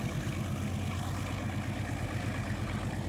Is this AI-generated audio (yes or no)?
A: no